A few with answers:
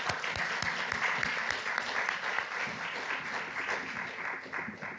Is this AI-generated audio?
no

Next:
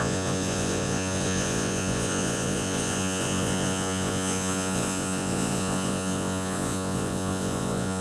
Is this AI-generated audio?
yes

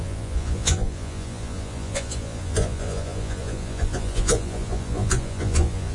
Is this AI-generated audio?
yes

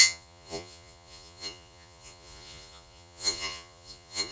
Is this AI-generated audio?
yes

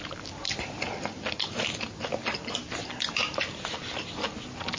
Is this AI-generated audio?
no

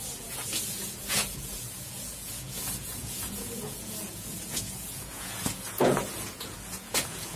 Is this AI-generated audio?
yes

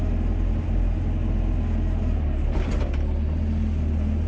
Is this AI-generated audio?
no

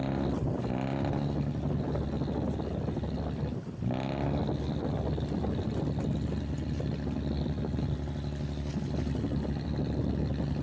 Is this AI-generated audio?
no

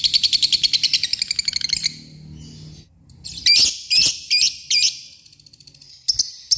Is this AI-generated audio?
no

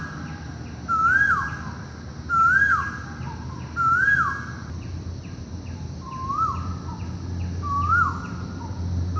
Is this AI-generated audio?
no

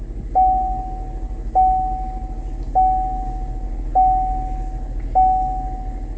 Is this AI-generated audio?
no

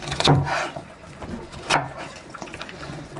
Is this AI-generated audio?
yes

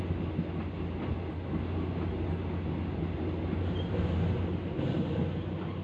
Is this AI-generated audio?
no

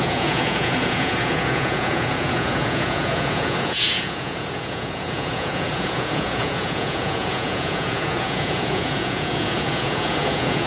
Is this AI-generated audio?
yes